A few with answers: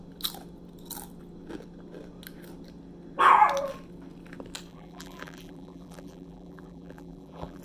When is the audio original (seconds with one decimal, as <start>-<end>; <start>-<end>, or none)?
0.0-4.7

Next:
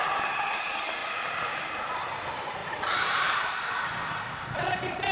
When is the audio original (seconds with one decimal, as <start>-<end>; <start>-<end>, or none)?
0.0-2.6; 3.8-5.1

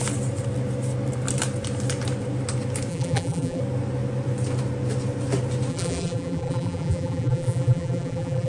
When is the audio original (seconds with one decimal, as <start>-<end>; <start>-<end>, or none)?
0.0-2.9; 3.6-5.7

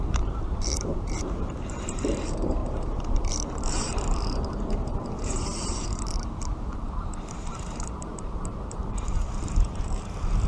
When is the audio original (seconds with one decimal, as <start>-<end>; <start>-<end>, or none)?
none

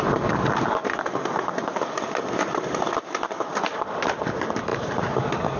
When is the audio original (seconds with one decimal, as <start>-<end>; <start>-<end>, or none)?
0.0-0.8; 4.2-4.7